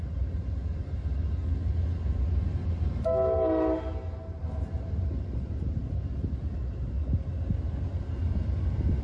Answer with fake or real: real